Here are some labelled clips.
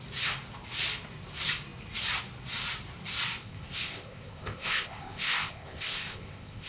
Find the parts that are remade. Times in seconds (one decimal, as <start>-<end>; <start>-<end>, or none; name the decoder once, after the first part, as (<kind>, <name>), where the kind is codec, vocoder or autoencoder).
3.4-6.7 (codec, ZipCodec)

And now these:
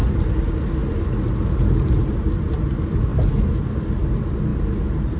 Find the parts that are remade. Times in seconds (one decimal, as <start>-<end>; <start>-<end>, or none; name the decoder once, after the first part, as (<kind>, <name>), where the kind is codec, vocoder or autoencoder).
none

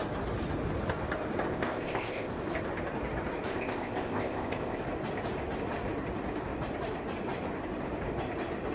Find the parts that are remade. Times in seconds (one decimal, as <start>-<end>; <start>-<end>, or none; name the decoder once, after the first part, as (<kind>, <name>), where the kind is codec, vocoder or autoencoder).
1.5-2.4 (codec, ZipCodec); 3.5-4.8

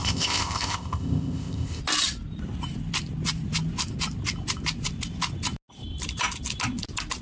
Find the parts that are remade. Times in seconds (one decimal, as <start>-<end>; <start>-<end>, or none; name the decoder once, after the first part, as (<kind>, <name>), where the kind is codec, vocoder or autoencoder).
0.0-1.8 (codec, ZipCodec)